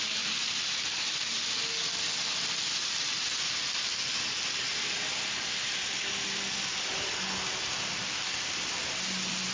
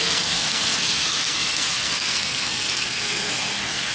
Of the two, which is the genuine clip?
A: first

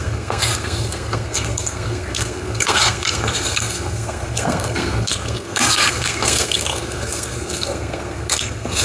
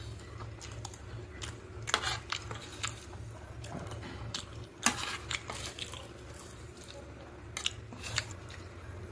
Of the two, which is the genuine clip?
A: second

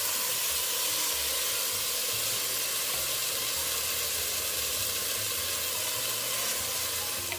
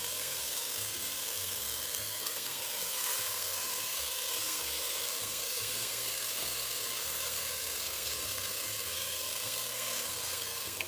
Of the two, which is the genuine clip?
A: first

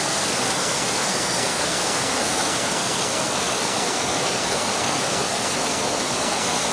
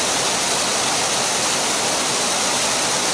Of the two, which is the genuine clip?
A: second